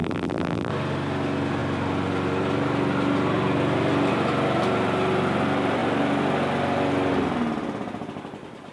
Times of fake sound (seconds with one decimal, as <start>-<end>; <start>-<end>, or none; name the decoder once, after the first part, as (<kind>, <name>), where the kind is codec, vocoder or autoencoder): 0.0-0.7 (vocoder, BigVGAN v2)